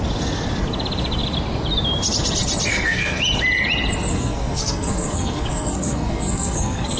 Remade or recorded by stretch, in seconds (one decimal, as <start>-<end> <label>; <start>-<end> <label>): 0.0-2.7 recorded; 2.7-3.2 remade; 3.2-4.1 recorded; 4.1-7.0 remade